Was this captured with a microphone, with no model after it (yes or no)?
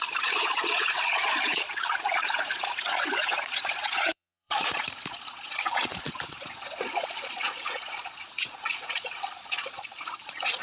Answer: no